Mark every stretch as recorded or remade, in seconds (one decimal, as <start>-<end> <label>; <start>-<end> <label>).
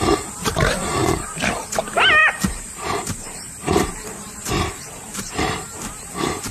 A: 0.0-1.0 recorded; 1.0-1.8 remade; 1.8-2.2 recorded; 2.2-6.1 remade; 6.1-6.5 recorded